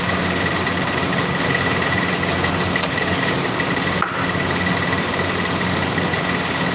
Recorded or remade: recorded